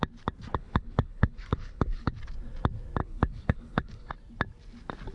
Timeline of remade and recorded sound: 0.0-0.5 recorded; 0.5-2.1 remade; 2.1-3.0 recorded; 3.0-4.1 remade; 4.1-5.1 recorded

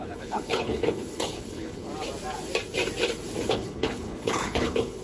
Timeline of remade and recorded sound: 0.0-1.9 remade; 1.9-3.5 recorded; 3.5-5.0 remade

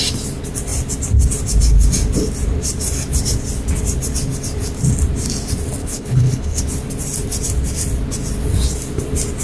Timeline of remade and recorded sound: 0.0-5.8 recorded; 5.8-6.6 remade; 6.6-9.4 recorded

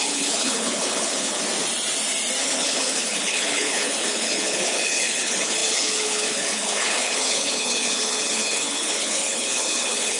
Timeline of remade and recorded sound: 0.0-1.4 remade; 1.4-2.4 recorded; 2.4-10.2 remade

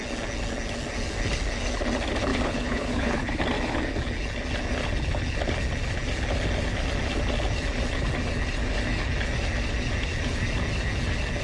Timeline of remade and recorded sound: 0.0-2.3 recorded; 2.3-3.4 remade; 3.4-11.4 recorded

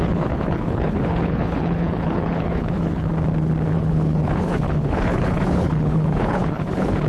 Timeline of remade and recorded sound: 0.0-3.1 remade; 3.1-3.7 recorded; 3.7-7.1 remade

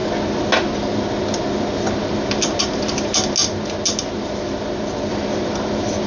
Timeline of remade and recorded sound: 0.0-6.1 recorded

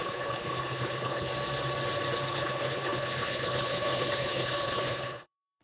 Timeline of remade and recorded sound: 0.0-1.3 remade; 1.3-2.3 recorded; 2.3-5.6 remade